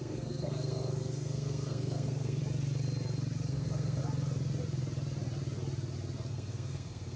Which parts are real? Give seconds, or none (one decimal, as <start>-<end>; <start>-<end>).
2.4-3.5; 4.0-6.3